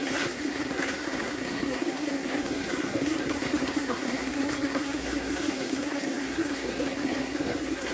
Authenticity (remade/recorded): remade